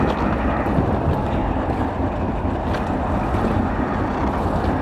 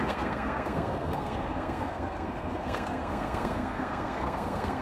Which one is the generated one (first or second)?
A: second